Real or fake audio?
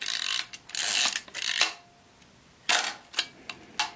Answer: real